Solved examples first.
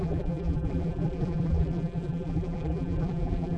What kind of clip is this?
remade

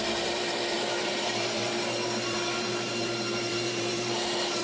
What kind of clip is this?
remade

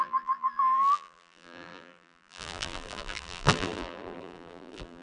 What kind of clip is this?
remade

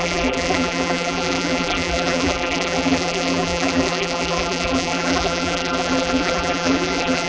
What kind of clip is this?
remade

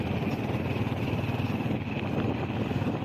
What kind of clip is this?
recorded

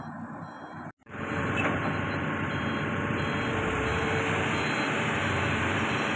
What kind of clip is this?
remade